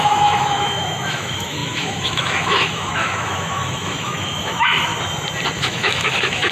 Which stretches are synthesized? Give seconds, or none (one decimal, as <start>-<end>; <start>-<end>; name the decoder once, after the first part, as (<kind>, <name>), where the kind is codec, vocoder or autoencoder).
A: 0.0-4.9 (autoencoder, DAC-VAE); 5.6-6.5